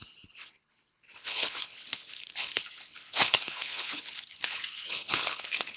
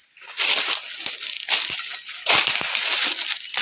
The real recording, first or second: second